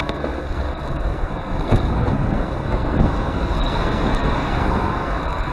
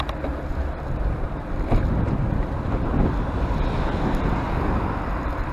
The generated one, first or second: first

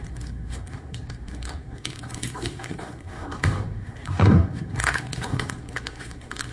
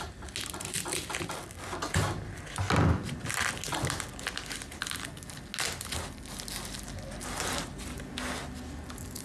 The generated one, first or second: first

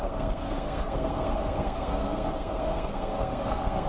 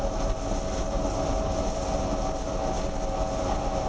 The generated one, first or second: first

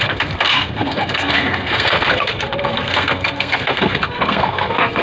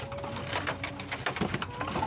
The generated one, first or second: first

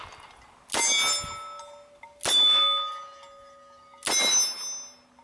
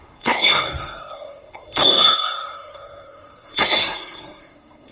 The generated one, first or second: second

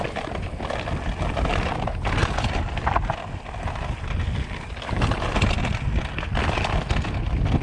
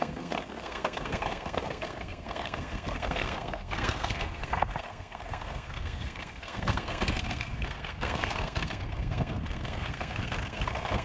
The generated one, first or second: second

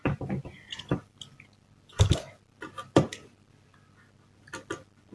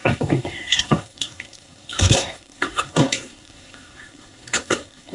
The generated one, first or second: second